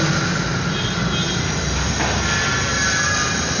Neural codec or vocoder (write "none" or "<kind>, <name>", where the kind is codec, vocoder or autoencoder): none